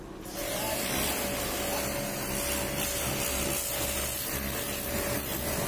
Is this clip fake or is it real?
real